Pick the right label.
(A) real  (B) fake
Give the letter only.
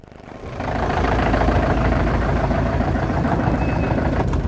B